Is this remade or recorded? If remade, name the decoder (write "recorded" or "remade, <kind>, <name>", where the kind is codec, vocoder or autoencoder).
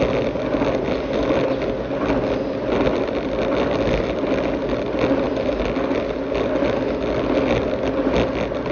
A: recorded